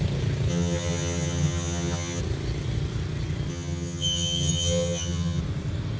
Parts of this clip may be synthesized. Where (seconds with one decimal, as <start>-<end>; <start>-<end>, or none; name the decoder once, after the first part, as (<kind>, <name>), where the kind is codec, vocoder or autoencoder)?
0.5-2.2 (vocoder, HiFi-GAN); 3.5-5.4